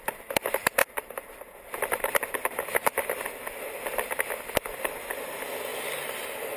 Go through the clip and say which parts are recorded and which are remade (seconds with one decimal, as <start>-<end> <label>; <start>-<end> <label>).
0.0-6.6 recorded